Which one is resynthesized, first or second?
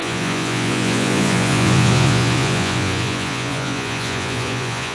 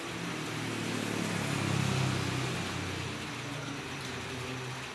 first